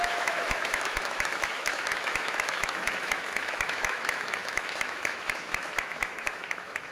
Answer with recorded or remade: remade